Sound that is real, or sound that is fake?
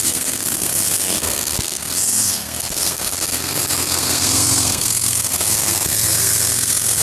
fake